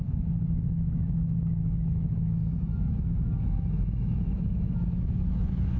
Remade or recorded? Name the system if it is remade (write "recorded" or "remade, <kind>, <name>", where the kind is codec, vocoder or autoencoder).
remade, autoencoder, DAC-VAE